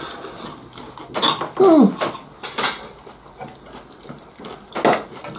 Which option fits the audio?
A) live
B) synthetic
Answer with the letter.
A